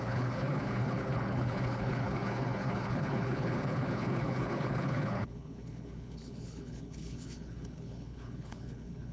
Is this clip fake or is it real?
fake